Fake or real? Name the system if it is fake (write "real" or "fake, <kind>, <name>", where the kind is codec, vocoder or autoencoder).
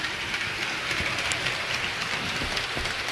real